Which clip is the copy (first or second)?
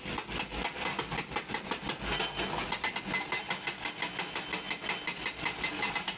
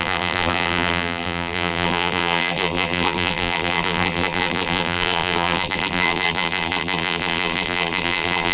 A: second